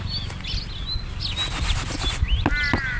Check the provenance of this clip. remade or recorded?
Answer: recorded